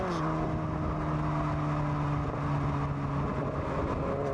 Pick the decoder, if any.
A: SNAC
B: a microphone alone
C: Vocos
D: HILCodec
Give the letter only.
B